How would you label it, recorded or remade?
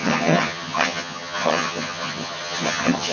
remade